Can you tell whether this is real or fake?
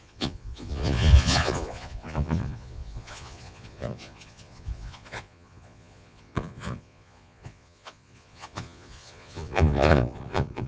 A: fake